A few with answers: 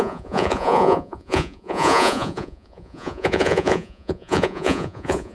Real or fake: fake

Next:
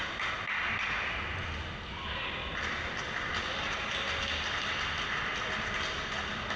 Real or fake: real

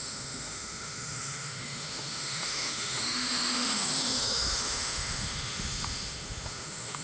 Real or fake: fake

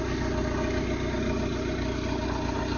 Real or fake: real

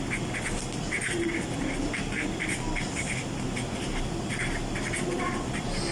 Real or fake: real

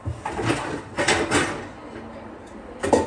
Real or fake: real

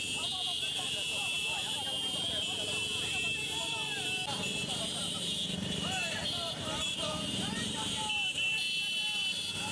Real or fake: fake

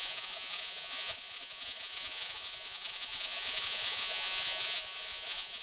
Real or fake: fake